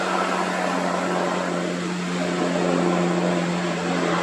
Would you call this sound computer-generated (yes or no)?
no